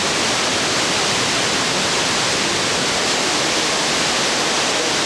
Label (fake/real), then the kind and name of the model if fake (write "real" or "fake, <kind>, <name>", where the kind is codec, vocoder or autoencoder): real